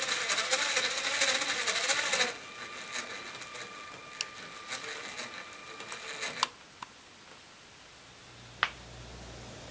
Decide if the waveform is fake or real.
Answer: real